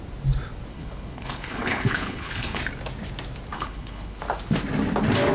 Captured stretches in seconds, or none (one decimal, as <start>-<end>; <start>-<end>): 0.0-0.7; 2.6-3.5; 4.2-5.3

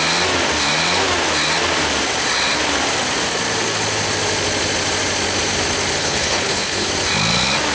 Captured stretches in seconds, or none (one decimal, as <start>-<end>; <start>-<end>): 0.0-6.0; 6.9-7.7

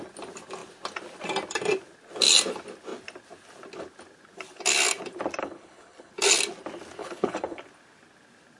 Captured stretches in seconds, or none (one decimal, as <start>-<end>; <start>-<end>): 0.0-5.4; 6.1-7.0; 7.6-8.6

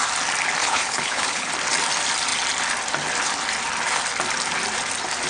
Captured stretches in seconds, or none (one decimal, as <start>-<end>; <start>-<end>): 0.0-0.6; 1.5-5.3

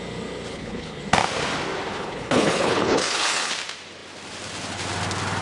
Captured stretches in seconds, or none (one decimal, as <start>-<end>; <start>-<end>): 0.0-0.5; 1.0-1.9; 3.5-5.4

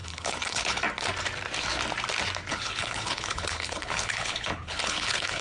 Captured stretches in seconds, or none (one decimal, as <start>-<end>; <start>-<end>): 0.8-2.5

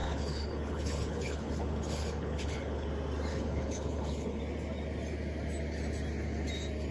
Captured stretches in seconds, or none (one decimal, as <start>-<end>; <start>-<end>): 2.9-3.3; 4.4-6.9